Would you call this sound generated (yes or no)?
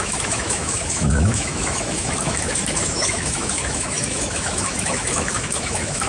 yes